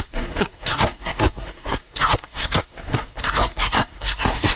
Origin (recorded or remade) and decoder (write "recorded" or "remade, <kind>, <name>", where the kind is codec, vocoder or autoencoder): remade, codec, SNAC